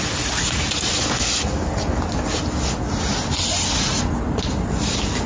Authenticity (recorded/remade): recorded